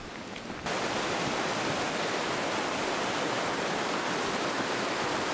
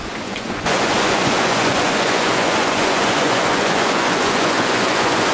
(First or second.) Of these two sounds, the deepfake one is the second